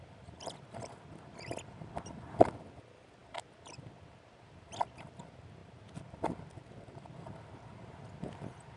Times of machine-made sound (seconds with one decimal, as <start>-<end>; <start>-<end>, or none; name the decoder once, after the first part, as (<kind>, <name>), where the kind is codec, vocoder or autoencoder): 0.0-8.8 (vocoder, BigVGAN v2)

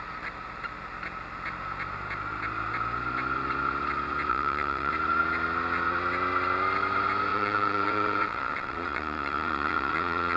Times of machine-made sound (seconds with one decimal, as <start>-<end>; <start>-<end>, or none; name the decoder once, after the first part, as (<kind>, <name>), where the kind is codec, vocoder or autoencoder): 4.3-4.9 (vocoder, WaveNeXt); 7.3-10.4